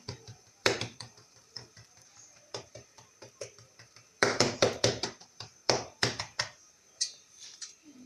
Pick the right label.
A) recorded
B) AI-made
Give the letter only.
B